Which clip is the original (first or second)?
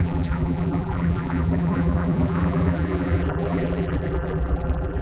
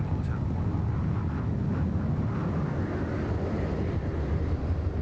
second